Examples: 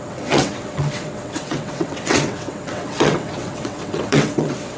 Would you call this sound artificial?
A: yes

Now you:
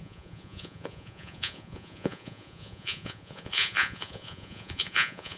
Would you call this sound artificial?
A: yes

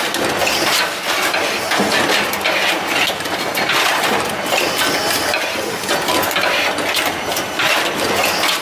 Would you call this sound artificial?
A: no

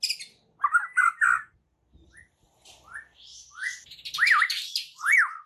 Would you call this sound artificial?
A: no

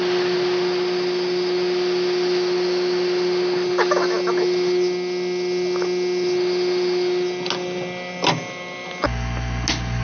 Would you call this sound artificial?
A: no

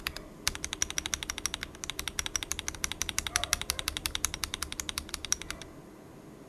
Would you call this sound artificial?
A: no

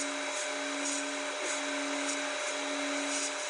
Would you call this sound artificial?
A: no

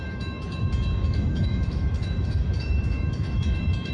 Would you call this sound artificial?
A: yes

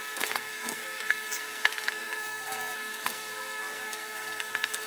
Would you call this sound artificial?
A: yes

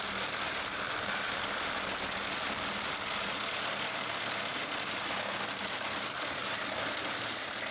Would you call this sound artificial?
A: no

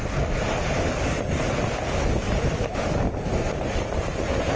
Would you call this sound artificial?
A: no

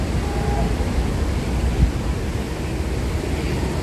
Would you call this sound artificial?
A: no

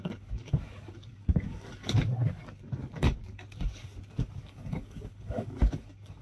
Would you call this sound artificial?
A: yes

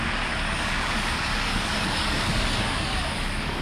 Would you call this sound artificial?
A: yes